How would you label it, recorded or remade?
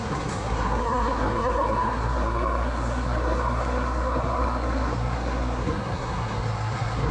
remade